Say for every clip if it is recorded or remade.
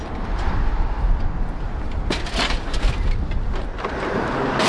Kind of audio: recorded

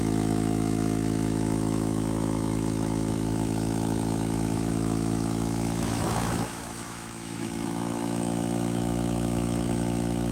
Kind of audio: remade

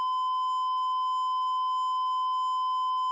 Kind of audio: remade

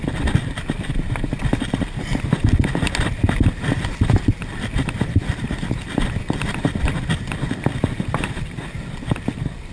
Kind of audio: recorded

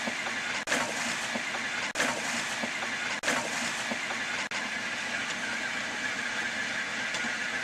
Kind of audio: recorded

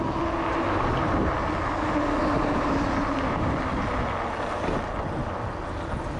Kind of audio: recorded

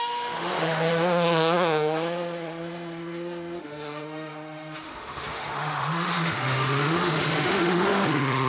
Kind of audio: remade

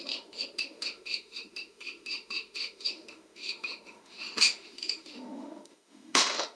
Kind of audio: remade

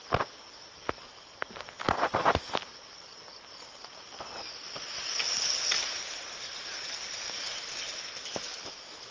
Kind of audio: recorded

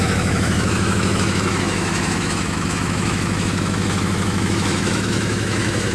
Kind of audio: remade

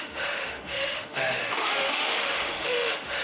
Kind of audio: remade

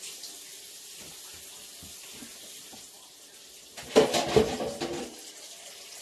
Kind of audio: recorded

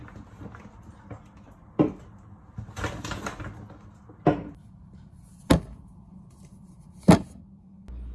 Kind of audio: recorded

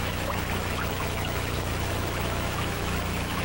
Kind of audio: remade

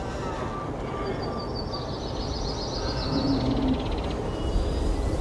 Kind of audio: recorded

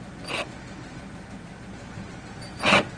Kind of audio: recorded